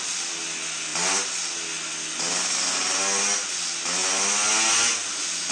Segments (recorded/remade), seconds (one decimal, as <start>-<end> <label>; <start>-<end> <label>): 0.0-5.5 recorded